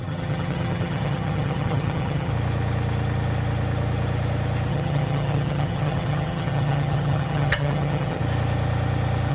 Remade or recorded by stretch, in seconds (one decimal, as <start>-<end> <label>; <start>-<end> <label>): 0.0-2.3 remade; 2.3-4.7 recorded; 4.7-8.2 remade; 8.2-9.3 recorded